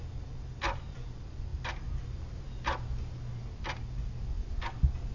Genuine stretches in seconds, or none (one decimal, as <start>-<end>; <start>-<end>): 0.0-5.1